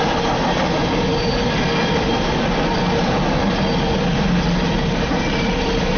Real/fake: real